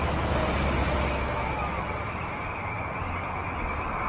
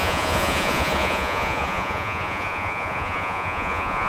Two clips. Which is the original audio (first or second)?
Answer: first